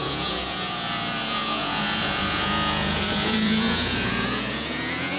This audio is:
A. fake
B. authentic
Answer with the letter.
A